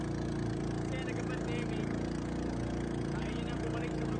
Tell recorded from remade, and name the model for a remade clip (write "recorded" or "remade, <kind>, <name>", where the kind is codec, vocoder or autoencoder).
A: recorded